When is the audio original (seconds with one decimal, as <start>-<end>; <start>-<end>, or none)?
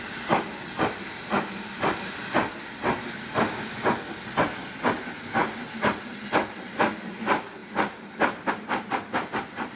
0.0-9.8